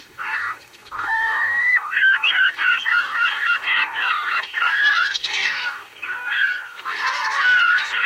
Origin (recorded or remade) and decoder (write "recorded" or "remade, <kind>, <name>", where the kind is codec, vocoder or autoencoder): remade, codec, DAC